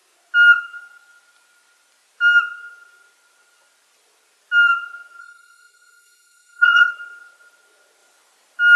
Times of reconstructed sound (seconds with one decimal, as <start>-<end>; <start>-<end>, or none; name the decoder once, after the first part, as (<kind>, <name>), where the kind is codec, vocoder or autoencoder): 5.2-6.9 (codec, SNAC)